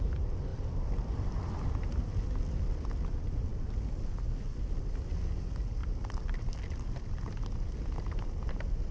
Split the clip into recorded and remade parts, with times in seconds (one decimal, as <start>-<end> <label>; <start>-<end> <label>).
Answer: 0.0-0.5 recorded; 0.5-1.7 remade; 1.7-5.8 recorded; 5.8-6.4 remade; 6.4-8.9 recorded